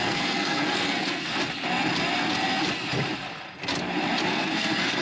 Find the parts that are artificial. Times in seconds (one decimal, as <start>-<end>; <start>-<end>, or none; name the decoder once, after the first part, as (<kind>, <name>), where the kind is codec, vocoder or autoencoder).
0.0-1.3 (codec, SNAC); 4.3-5.0